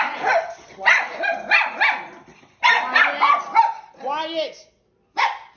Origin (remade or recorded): recorded